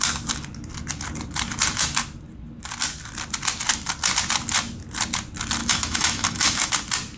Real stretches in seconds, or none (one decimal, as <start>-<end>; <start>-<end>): 0.0-5.6; 6.7-7.2